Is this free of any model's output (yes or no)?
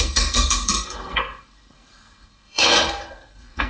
no